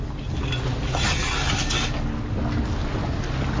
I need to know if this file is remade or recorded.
recorded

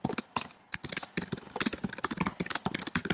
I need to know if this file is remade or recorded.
recorded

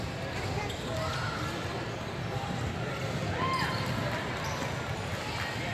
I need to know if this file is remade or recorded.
recorded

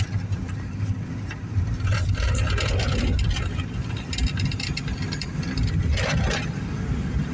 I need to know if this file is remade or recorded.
recorded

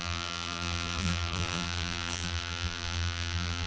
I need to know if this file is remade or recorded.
remade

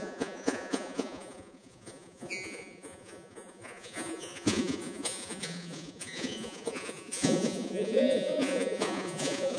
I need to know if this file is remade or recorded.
remade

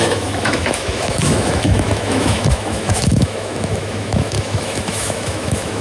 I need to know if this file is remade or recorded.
remade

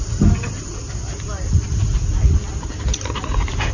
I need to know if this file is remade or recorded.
recorded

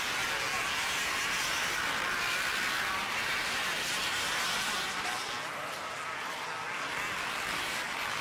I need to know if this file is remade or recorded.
recorded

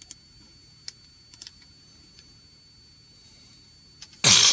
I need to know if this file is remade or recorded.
recorded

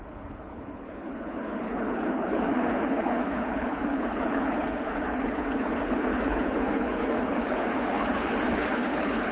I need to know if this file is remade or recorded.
remade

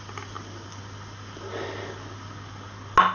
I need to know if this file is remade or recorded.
recorded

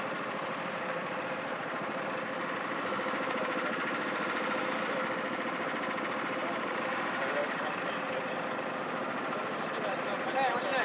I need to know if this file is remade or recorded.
recorded